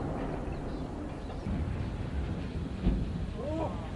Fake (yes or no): no